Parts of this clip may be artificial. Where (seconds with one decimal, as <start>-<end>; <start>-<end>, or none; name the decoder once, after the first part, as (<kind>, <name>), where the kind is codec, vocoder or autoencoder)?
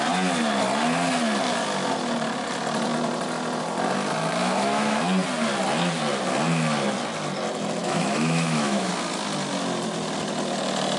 4.4-5.0 (autoencoder, DAC-VAE); 7.8-8.9